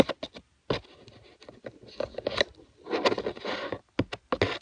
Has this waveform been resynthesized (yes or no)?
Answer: no